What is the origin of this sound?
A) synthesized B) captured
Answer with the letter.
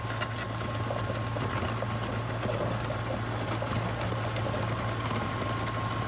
B